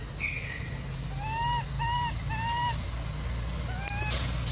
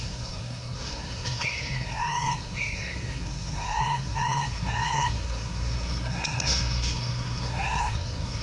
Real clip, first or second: first